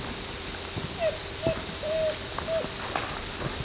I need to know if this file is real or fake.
real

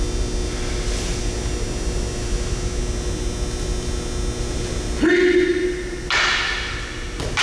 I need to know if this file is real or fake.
real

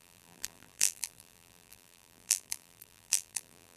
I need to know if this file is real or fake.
fake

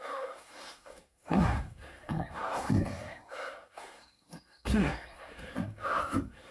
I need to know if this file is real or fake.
fake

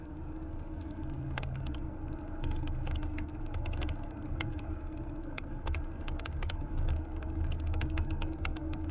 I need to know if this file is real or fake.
fake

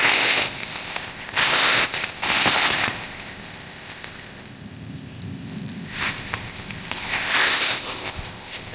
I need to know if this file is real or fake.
fake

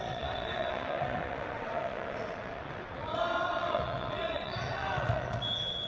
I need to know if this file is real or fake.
fake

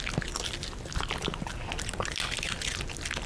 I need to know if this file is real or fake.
real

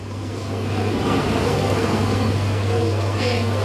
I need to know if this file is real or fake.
fake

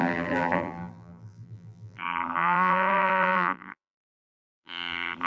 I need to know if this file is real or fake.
fake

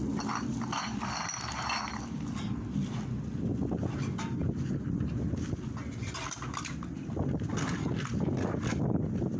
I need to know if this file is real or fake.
real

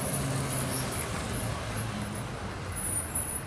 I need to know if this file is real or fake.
real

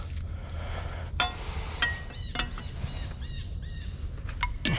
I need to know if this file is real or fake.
real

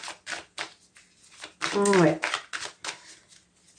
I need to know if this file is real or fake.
real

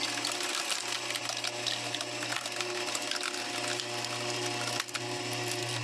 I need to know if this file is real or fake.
real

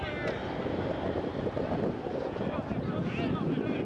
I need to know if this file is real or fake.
real